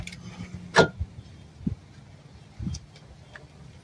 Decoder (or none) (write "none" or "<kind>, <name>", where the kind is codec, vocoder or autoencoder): none